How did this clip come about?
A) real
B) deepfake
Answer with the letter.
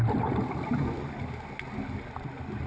A